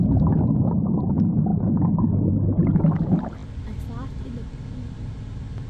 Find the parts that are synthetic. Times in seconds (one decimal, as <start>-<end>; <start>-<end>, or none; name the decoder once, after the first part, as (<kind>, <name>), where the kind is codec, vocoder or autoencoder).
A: none